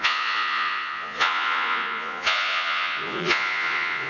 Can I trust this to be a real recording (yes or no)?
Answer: no